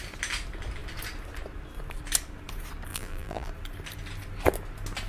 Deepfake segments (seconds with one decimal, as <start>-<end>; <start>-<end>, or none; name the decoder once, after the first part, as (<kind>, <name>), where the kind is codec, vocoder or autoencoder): 2.9-3.5 (vocoder, BigVGAN v2)